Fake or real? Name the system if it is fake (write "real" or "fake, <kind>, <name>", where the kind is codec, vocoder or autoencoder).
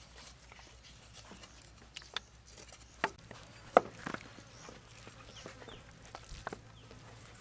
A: real